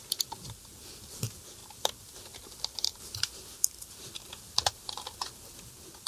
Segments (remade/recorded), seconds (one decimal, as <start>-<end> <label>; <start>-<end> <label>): 0.0-6.1 recorded

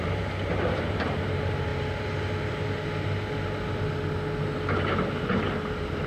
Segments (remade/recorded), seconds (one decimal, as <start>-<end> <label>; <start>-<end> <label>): 0.0-1.7 remade; 1.7-5.4 recorded; 5.4-6.1 remade

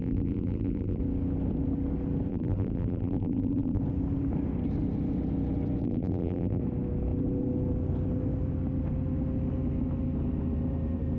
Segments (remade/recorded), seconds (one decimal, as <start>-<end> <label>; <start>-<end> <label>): 0.0-1.0 remade; 1.0-2.3 recorded; 2.3-3.8 remade; 3.8-5.8 recorded; 5.8-6.6 remade; 6.6-11.2 recorded